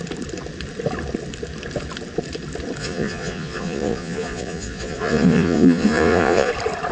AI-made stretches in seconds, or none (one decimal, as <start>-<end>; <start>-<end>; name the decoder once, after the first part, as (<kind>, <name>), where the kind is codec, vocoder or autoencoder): 2.8-6.5 (vocoder, Vocos)